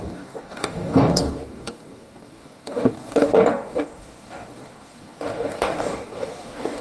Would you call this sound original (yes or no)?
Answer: no